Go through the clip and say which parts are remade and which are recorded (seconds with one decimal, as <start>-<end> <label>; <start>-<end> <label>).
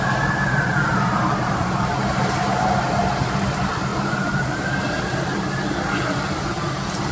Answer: 0.0-7.1 remade